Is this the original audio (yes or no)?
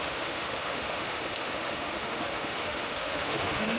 no